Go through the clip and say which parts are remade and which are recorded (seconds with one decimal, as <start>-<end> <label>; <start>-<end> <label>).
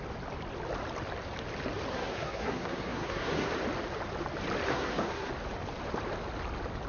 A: 0.0-1.9 recorded; 1.9-3.5 remade; 3.5-4.7 recorded; 4.7-5.3 remade; 5.3-6.9 recorded